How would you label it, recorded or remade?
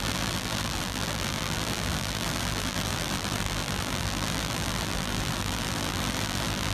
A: remade